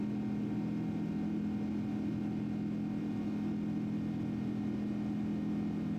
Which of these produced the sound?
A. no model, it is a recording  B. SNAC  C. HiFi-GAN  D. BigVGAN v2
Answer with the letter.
A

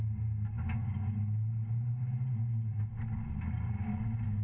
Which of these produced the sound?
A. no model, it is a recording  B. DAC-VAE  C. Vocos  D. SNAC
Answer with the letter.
A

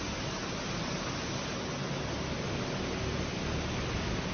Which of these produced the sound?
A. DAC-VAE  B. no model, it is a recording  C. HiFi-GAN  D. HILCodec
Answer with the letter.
B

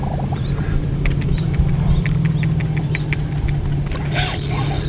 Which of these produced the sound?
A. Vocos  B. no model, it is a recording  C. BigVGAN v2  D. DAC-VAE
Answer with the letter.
C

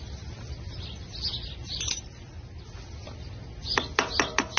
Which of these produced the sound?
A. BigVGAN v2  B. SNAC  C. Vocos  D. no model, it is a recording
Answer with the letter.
A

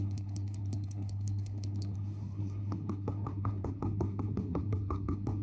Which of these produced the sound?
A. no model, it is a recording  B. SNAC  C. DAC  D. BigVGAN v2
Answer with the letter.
B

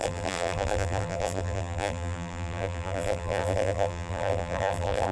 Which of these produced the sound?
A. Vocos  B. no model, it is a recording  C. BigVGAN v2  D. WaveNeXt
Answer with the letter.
C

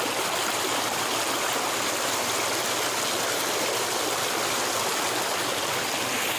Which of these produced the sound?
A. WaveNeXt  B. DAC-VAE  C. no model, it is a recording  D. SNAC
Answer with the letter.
C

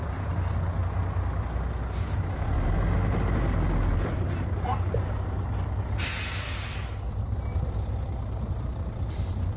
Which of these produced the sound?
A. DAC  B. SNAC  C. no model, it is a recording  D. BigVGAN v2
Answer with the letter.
C